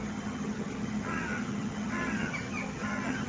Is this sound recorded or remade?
remade